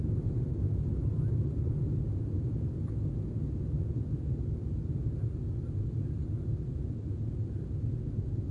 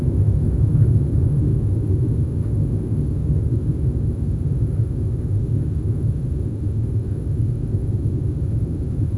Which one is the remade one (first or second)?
second